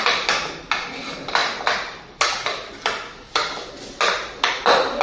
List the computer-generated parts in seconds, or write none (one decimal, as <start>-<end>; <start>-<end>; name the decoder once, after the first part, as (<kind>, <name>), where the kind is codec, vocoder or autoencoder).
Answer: none